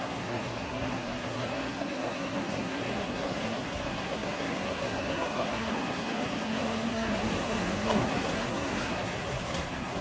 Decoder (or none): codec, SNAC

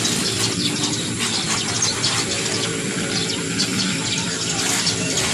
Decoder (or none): none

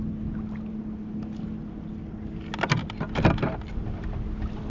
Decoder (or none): none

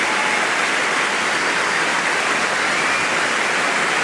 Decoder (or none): none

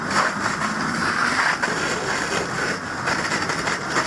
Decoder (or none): none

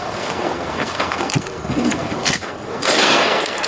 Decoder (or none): codec, SNAC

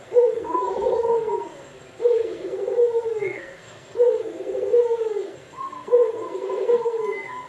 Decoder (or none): codec, SNAC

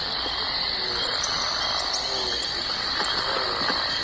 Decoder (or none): none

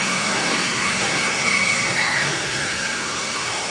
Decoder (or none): codec, SNAC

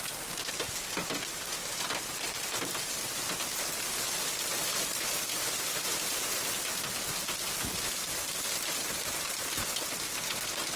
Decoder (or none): none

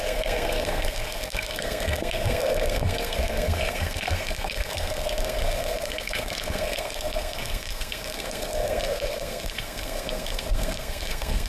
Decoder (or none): codec, SNAC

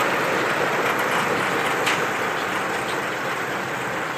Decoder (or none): none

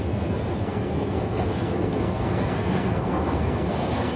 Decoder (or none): codec, SNAC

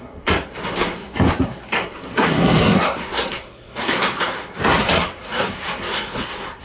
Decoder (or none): codec, SNAC